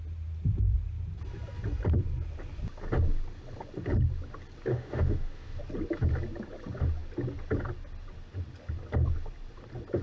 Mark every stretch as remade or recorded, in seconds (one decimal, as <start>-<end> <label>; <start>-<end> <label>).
0.0-4.7 recorded; 4.7-5.6 remade; 5.6-10.0 recorded